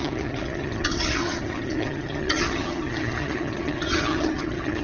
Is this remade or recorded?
remade